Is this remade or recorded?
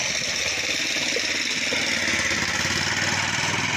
recorded